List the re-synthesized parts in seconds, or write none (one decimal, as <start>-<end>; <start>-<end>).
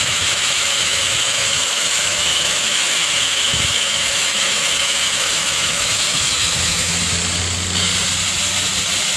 0.0-6.9